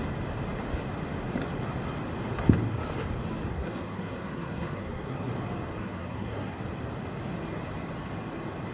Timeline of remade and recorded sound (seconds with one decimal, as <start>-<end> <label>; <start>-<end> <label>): 0.0-3.5 recorded; 3.5-5.3 remade; 5.3-5.8 recorded; 5.8-6.6 remade; 6.6-8.7 recorded